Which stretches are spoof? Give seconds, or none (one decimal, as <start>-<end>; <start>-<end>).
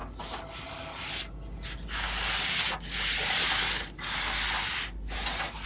none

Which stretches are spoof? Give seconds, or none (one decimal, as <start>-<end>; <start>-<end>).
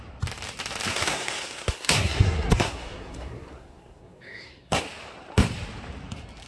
0.9-4.8